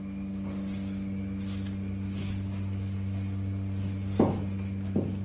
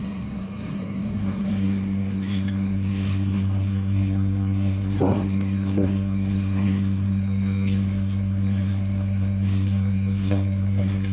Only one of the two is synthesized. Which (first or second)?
second